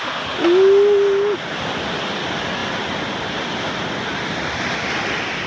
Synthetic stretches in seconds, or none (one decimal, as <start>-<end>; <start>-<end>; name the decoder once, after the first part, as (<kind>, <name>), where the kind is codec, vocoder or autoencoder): none